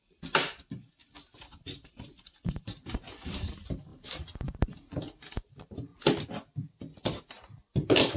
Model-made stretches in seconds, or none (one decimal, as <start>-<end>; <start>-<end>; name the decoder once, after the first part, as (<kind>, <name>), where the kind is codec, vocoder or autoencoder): 0.0-5.9 (vocoder, BigVGAN v2); 7.1-8.2